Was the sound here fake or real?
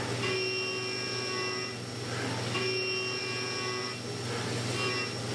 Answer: real